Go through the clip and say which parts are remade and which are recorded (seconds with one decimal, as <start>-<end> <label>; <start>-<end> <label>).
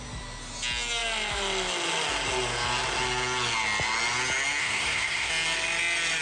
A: 0.0-4.6 recorded; 4.6-5.3 remade; 5.3-6.2 recorded